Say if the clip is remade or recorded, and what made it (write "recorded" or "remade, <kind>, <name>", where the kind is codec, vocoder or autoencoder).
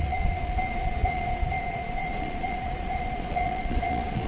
remade, vocoder, Vocos